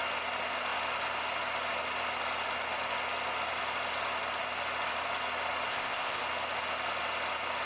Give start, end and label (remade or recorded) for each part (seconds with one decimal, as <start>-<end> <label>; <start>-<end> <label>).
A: 0.0-5.7 recorded; 5.7-6.2 remade; 6.2-7.7 recorded